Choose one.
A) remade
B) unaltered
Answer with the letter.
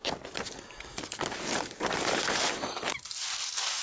B